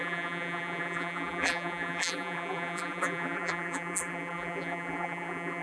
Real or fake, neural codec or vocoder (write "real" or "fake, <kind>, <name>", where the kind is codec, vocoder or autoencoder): fake, vocoder, BigVGAN v2